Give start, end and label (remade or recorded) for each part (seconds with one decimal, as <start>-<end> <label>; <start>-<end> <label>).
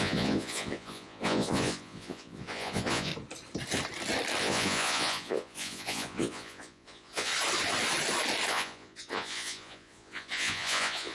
0.0-3.1 remade; 3.1-4.4 recorded; 4.4-7.3 remade; 7.3-8.5 recorded; 8.5-11.1 remade